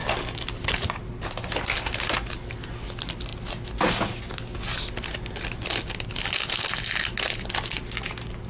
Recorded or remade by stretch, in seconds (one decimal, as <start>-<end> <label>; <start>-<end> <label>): 0.0-8.5 recorded